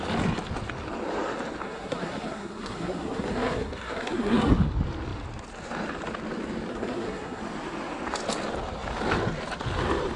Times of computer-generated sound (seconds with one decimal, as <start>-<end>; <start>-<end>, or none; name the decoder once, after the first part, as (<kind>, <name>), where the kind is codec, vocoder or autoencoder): 1.6-4.5 (codec, SNAC); 6.7-7.4